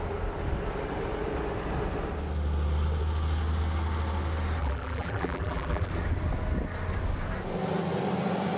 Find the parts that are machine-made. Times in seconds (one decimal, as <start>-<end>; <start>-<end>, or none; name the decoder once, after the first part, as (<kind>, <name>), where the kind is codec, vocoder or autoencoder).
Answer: 4.6-5.9 (vocoder, BigVGAN v2)